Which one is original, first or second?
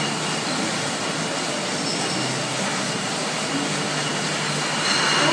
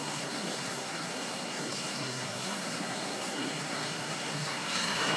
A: first